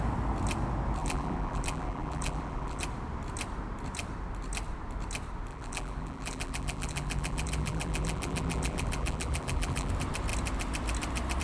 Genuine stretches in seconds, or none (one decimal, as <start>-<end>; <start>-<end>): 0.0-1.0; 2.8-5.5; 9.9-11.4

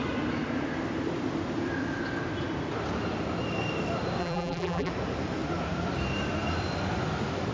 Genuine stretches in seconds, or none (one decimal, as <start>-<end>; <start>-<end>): 0.0-4.2; 4.9-7.5

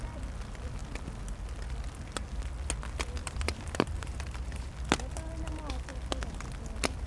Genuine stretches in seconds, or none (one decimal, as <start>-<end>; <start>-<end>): 0.0-3.2; 4.7-7.1

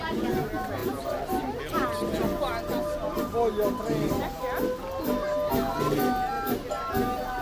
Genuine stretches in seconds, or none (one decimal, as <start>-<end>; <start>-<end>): 0.0-0.8; 1.6-7.4